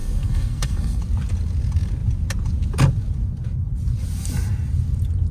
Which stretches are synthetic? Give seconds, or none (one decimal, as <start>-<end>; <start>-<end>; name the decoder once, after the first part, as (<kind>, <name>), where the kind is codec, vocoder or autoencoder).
0.0-1.0 (codec, SNAC)